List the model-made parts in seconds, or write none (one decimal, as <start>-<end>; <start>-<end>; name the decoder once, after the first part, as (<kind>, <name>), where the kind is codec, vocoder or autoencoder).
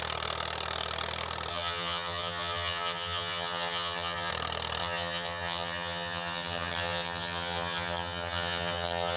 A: 1.5-4.3 (vocoder, HiFi-GAN); 4.8-9.2